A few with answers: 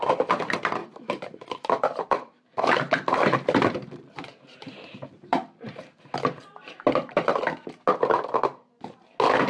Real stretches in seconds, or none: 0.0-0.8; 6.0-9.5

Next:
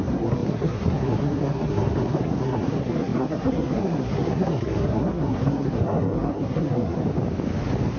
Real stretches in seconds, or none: 7.0-8.0

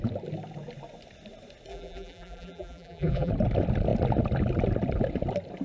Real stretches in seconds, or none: 0.0-1.7; 3.3-5.6

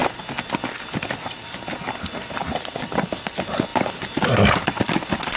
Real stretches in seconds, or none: 0.0-3.7; 4.5-5.4